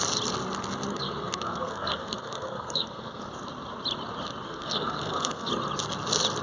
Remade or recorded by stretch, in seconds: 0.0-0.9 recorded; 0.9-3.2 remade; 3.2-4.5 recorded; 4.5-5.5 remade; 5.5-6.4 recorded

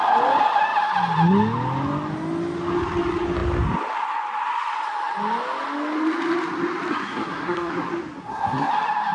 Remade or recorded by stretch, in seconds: 0.0-6.9 recorded; 6.9-7.7 remade; 7.7-8.2 recorded; 8.2-8.7 remade; 8.7-9.1 recorded

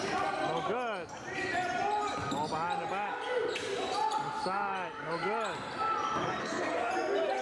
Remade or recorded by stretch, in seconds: 0.0-6.4 recorded; 6.4-6.9 remade; 6.9-7.4 recorded

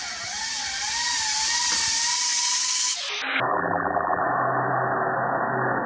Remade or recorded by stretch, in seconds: 0.0-3.5 recorded; 3.5-4.2 remade; 4.2-5.9 recorded

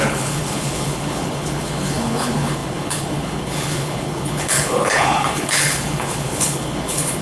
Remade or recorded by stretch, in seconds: 0.0-7.2 remade

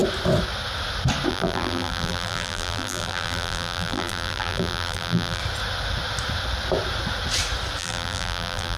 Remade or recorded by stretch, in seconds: 0.0-1.3 recorded; 1.3-5.4 remade; 5.4-7.8 recorded; 7.8-8.8 remade

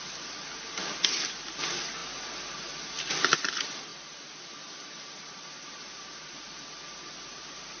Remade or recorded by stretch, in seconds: 0.0-7.8 recorded